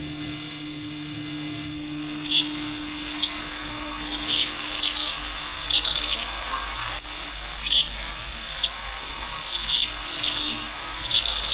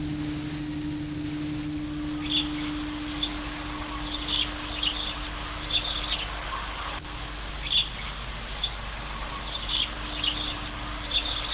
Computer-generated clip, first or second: first